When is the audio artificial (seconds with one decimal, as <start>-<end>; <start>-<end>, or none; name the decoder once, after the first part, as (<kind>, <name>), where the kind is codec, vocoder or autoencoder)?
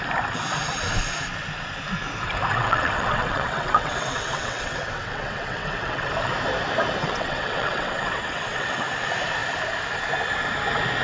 2.5-6.1 (vocoder, WaveNeXt); 7.0-8.8